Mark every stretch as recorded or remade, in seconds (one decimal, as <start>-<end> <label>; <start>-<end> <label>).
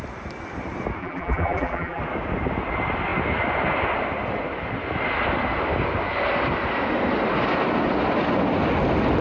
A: 0.0-1.0 recorded; 1.0-2.0 remade; 2.0-9.2 recorded